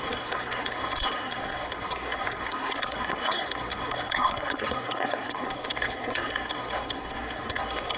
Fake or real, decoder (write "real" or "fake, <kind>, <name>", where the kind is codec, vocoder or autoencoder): fake, codec, SNAC